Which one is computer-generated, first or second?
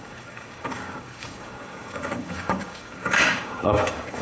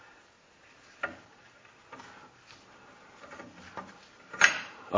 first